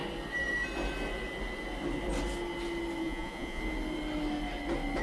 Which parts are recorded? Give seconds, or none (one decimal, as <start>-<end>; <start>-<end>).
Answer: 0.0-3.0; 3.6-5.0